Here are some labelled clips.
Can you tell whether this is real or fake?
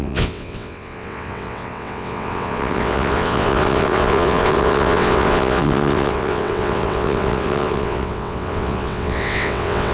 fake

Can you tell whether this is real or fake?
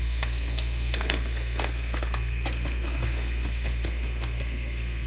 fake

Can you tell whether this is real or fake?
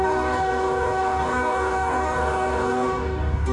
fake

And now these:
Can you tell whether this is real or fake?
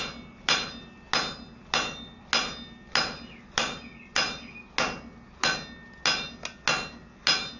real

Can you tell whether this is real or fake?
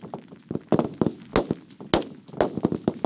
real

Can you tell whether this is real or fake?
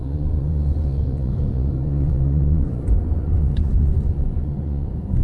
fake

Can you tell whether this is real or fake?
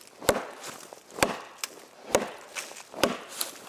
real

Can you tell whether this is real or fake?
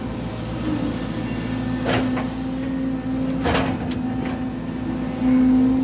real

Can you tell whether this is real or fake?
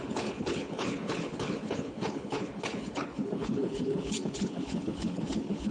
fake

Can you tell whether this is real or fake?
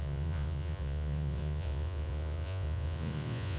fake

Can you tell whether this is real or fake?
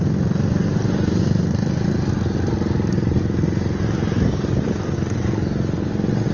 real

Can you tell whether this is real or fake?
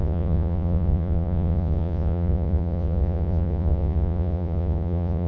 fake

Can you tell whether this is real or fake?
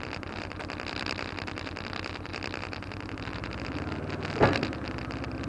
real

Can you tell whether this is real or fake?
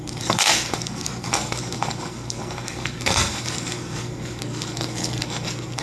fake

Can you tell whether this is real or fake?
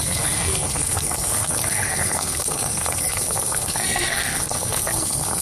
fake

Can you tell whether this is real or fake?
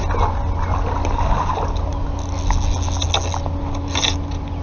real